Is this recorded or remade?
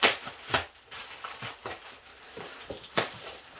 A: recorded